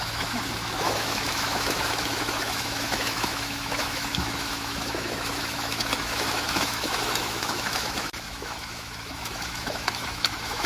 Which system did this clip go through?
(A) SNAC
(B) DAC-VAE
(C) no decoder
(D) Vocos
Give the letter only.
B